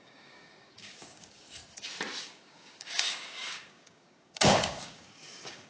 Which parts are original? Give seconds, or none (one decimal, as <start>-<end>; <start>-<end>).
1.6-2.2